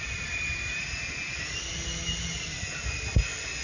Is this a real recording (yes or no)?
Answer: yes